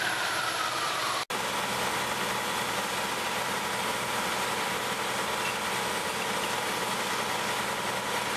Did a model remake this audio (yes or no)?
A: no